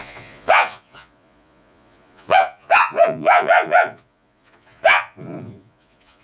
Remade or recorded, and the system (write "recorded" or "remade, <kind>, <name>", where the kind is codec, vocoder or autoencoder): remade, vocoder, Vocos